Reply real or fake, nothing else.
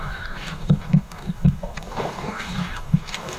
fake